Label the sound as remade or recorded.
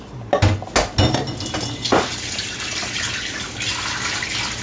recorded